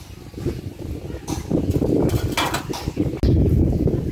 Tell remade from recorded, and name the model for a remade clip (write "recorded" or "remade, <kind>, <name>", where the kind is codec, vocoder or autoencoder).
recorded